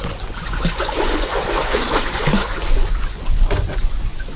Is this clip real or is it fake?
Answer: fake